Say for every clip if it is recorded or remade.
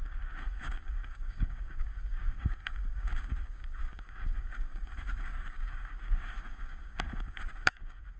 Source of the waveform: remade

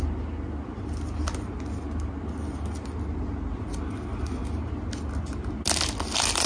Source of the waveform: recorded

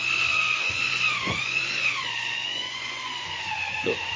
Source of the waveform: remade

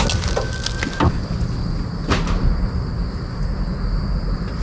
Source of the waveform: recorded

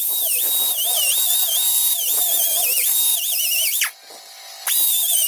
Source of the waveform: recorded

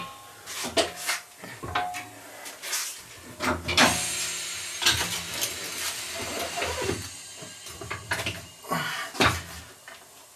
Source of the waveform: recorded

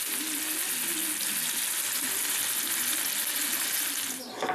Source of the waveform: recorded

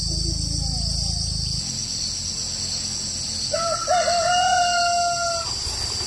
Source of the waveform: recorded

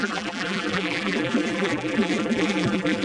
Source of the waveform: remade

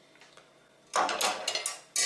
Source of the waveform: recorded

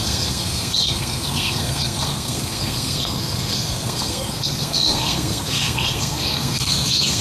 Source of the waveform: remade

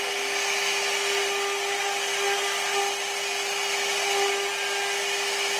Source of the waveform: recorded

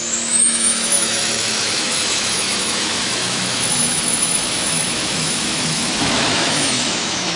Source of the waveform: remade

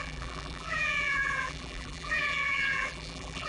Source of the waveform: remade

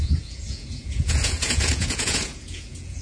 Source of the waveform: remade